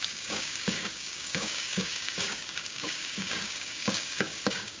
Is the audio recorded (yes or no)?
no